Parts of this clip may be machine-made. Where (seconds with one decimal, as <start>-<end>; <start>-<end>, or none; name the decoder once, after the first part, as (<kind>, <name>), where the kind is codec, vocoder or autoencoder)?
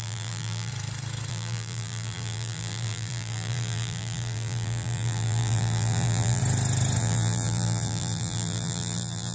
0.0-0.7 (vocoder, BigVGAN v2); 1.3-6.4; 7.0-9.3